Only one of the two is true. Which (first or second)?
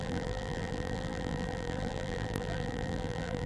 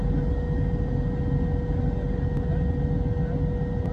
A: second